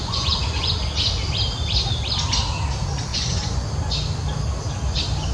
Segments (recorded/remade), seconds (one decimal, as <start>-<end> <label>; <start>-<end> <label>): 0.0-0.7 remade; 0.7-3.1 recorded; 3.1-3.7 remade; 3.7-5.3 recorded